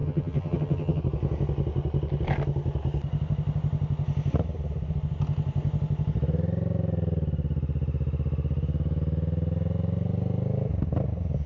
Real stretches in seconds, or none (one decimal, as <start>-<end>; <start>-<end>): 1.0-11.5